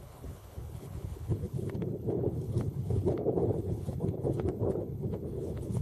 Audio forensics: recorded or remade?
remade